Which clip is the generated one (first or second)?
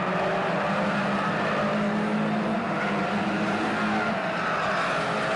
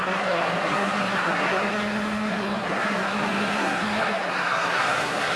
second